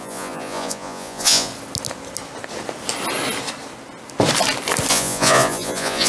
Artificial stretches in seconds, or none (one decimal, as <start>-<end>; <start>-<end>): 0.0-1.5; 4.9-6.1